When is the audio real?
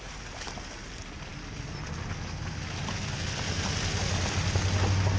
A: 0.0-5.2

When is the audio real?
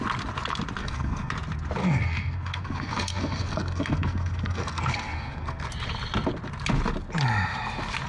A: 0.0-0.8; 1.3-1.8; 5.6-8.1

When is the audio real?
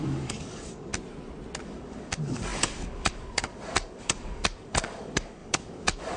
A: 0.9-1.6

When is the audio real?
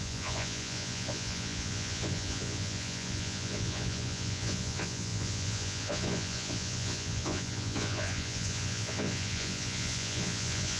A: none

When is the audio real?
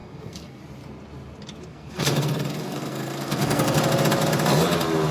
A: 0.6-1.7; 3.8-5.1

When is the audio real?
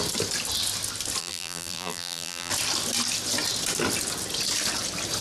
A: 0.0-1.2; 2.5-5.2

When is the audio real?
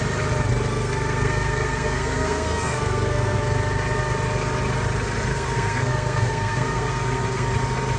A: 0.0-0.7; 3.4-5.3; 7.5-8.0